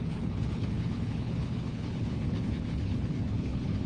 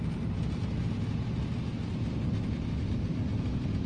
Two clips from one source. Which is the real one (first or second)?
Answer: second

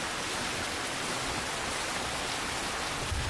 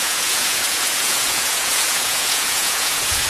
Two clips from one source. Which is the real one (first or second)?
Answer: first